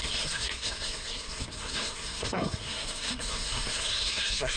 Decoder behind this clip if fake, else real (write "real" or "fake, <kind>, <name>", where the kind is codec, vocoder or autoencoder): fake, codec, SNAC